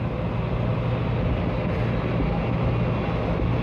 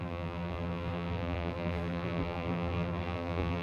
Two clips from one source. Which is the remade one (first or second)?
second